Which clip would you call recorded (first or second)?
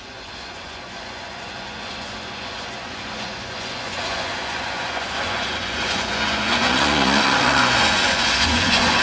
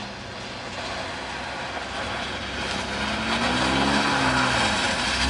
second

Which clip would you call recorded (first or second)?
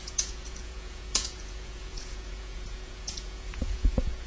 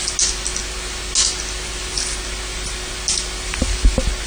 second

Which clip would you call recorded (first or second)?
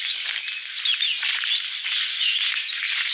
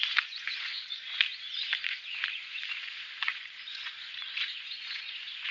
first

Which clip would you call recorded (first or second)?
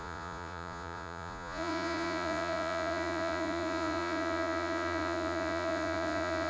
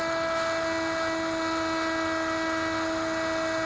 second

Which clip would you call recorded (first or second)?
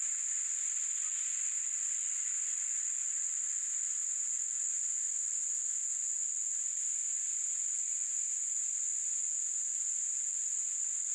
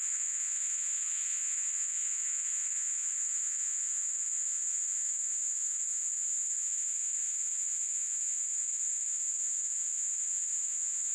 first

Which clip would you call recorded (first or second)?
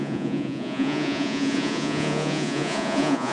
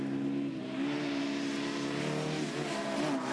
second